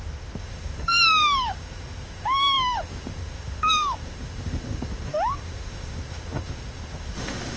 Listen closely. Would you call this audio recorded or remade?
remade